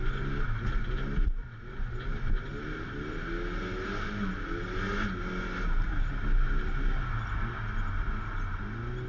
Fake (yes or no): no